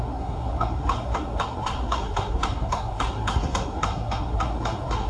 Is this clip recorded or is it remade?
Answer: remade